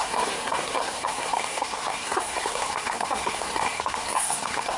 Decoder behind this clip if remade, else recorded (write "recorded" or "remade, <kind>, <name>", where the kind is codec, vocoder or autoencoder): remade, codec, SNAC